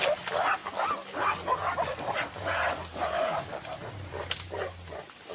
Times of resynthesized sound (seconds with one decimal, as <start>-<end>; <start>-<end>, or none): none